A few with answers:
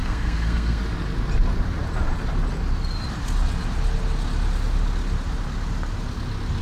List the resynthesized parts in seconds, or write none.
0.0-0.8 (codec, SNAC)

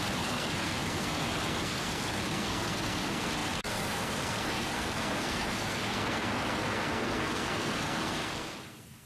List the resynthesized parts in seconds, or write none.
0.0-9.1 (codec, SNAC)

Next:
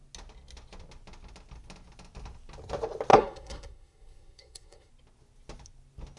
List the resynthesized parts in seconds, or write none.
3.1-4.9 (codec, SNAC)